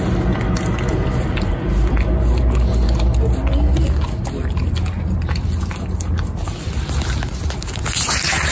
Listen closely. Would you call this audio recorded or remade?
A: recorded